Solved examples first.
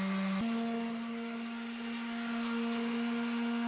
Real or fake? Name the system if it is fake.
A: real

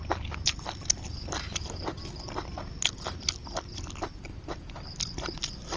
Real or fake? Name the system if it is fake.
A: real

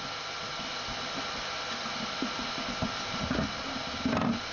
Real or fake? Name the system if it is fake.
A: real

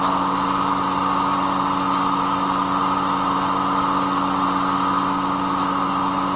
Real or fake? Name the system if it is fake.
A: real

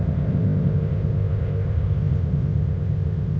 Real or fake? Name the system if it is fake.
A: fake, codec, ZipCodec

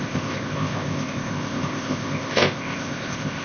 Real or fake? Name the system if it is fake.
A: fake, codec, ZipCodec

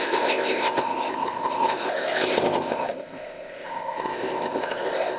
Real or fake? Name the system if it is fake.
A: fake, codec, ZipCodec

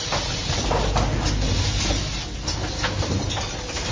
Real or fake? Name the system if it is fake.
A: real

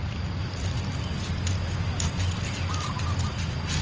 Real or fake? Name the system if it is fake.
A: real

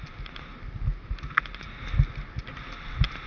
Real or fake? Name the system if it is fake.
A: real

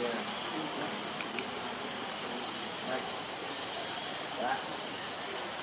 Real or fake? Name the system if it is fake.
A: real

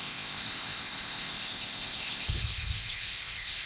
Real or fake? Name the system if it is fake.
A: fake, codec, ZipCodec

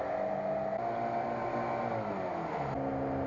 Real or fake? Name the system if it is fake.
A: real